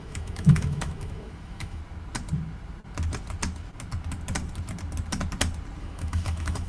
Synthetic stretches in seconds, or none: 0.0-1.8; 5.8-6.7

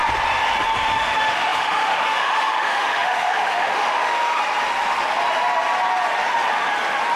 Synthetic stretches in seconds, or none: 0.8-4.4

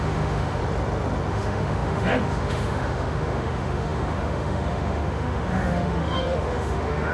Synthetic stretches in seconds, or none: 0.0-0.6; 1.3-7.1

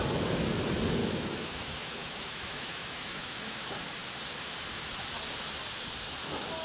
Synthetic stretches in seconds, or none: 1.0-3.6

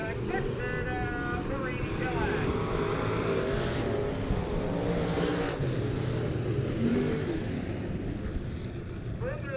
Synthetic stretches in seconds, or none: 6.9-7.5

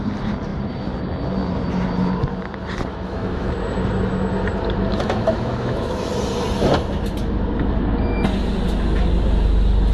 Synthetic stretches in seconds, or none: 2.9-3.5; 4.9-6.1

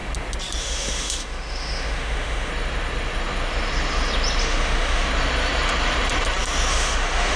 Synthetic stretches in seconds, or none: 0.6-2.5; 4.4-5.1; 6.7-7.4

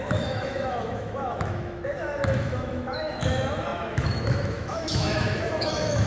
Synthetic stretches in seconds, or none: 0.0-6.1